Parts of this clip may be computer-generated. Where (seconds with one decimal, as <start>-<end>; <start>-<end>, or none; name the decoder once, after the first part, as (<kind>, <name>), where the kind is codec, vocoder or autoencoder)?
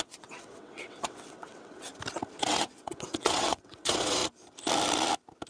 0.0-1.9 (vocoder, WaveNeXt); 2.4-4.2